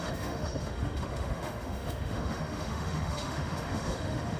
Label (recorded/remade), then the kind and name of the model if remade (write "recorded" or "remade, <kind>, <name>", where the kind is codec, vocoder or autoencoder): remade, autoencoder, DAC-VAE